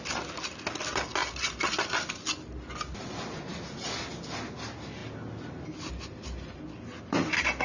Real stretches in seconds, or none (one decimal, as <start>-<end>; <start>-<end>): 0.0-7.6